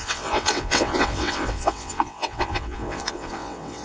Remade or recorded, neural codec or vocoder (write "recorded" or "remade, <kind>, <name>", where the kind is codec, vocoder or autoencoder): remade, vocoder, WaveNeXt